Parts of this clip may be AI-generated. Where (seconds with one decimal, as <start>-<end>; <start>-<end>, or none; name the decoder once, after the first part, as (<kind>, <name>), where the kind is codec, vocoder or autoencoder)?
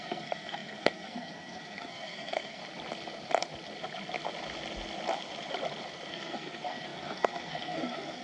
0.0-2.6 (codec, SNAC); 6.1-8.2